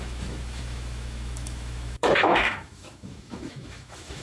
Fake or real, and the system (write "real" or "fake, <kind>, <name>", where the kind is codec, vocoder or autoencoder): fake, autoencoder, DAC-VAE